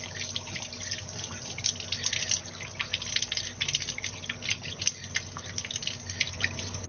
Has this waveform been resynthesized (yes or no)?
no